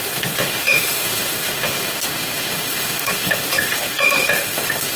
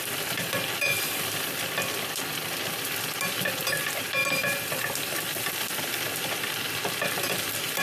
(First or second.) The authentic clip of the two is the second